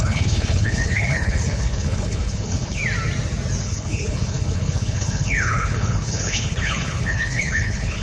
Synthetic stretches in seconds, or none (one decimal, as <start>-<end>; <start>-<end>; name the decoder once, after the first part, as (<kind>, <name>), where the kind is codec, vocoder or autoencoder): 0.0-2.8 (codec, HILCodec); 3.6-8.0